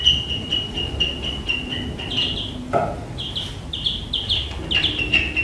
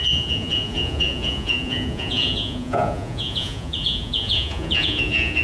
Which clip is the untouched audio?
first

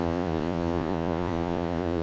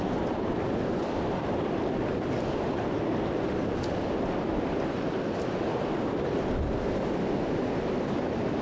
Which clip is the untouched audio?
second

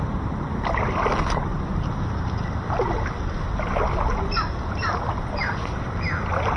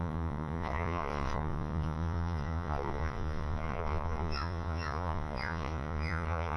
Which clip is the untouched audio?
first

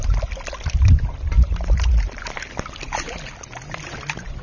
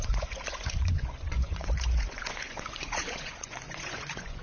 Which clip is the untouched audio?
first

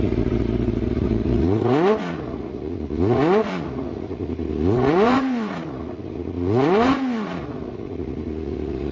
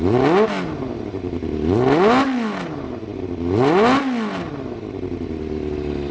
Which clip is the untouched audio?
second